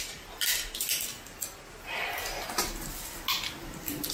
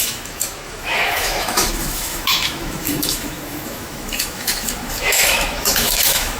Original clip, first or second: first